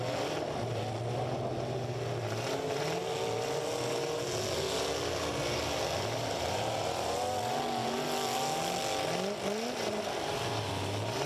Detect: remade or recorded recorded